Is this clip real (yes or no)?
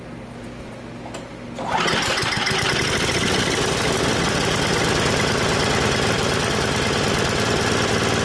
yes